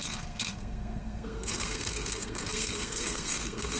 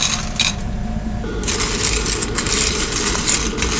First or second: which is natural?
second